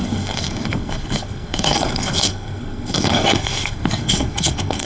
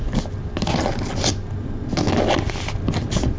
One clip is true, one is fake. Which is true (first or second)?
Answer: second